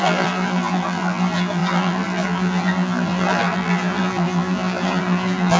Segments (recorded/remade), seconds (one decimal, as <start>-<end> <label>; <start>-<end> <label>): 0.0-5.6 remade